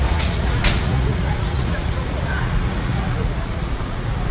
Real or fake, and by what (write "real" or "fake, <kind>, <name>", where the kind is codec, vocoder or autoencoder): fake, vocoder, Vocos